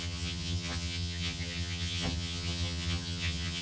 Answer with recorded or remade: remade